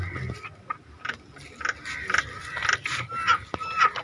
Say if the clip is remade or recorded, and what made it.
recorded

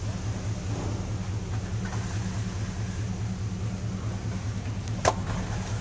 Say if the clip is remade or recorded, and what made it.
recorded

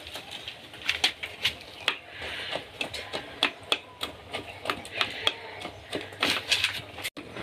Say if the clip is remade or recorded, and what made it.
recorded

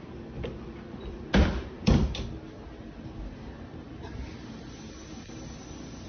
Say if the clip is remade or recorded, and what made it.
recorded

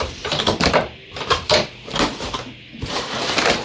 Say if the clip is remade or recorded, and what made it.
remade, vocoder, BigVGAN v2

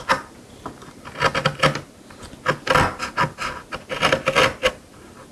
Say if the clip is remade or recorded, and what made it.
recorded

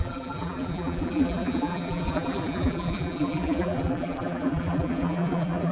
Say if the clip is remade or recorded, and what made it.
remade, vocoder, BigVGAN v2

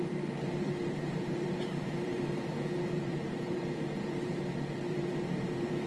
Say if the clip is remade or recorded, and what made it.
remade, vocoder, BigVGAN v2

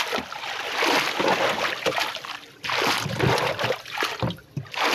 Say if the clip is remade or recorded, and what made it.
recorded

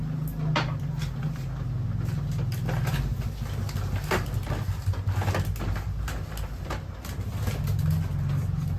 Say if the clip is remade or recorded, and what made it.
recorded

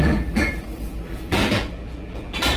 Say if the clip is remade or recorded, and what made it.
remade, vocoder, BigVGAN v2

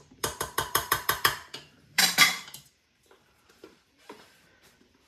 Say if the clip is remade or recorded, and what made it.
remade, vocoder, BigVGAN v2